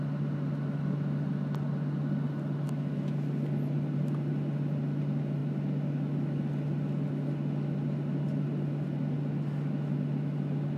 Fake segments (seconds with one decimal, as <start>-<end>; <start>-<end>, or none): none